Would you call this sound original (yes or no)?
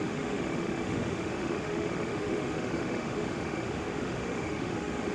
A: no